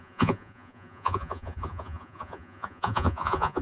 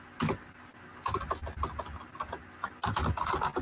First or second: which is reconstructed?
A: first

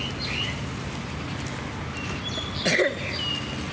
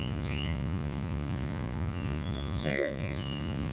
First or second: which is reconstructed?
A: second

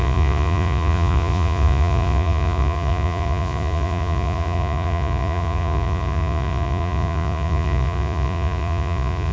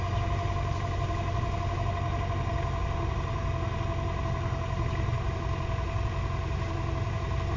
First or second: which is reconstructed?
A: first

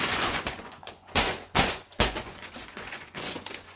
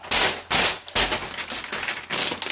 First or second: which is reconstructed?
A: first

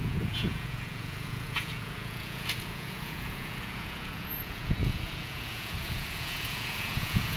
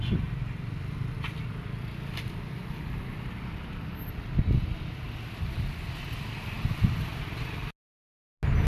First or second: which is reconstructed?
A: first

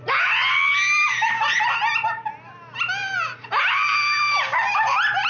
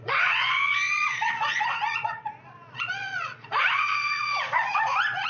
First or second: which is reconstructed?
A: second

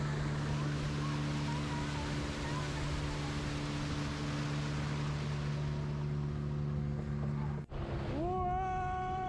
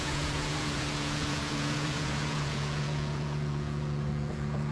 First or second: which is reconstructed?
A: second